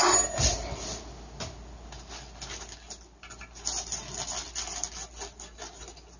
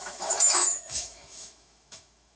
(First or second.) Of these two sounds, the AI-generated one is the second